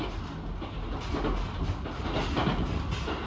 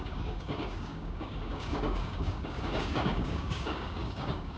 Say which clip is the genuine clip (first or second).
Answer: first